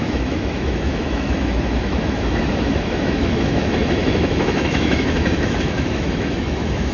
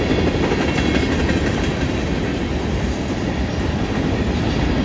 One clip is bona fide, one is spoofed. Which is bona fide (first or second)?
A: second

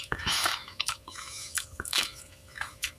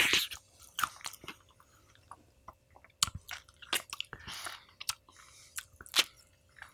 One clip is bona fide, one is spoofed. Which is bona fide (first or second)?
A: second